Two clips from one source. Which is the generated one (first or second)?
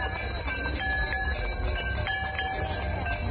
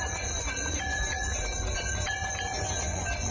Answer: second